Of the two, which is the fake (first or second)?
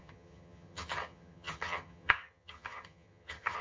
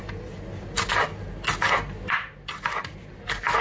first